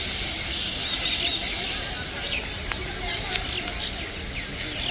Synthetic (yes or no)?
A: no